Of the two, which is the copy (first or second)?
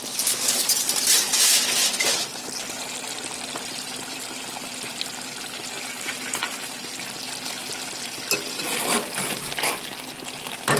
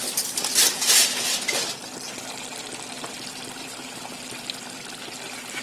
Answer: second